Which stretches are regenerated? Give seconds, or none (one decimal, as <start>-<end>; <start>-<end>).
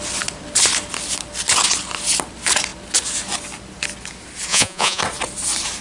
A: 4.5-5.0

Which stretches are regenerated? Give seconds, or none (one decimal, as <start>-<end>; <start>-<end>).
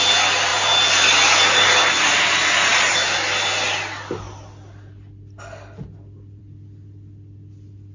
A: none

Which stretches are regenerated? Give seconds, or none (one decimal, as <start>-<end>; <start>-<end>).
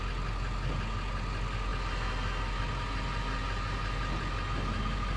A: none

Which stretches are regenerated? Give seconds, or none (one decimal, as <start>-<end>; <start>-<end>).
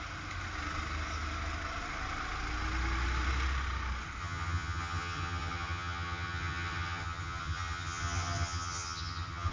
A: 4.2-9.5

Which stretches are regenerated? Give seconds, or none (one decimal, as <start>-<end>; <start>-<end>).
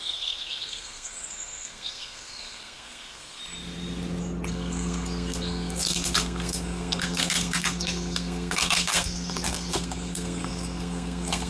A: 0.0-3.4; 4.5-11.5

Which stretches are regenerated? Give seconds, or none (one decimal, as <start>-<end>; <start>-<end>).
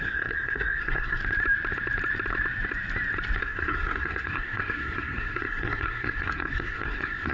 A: 0.0-1.2; 3.4-7.3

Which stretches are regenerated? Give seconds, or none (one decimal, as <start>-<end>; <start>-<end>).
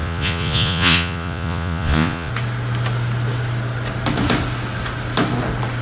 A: 0.0-2.3